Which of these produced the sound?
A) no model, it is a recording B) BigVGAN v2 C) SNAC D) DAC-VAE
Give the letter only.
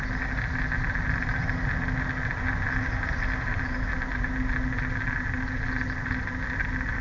A